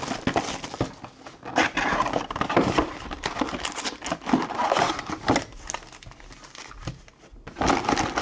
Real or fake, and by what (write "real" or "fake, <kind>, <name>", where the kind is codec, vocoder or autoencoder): real